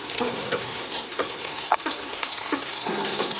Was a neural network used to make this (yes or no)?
yes